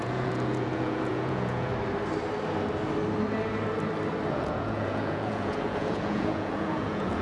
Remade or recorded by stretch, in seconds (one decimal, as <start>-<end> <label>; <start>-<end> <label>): 0.0-1.7 remade; 1.7-4.3 recorded; 4.3-7.2 remade